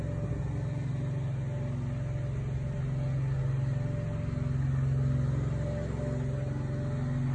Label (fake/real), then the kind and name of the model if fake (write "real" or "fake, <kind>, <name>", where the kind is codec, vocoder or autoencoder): real